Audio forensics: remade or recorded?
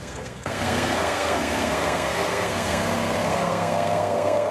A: remade